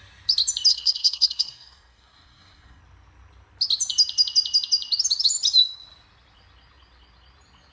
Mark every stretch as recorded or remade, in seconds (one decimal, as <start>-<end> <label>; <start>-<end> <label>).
0.0-0.7 recorded; 0.7-2.8 remade; 2.8-7.7 recorded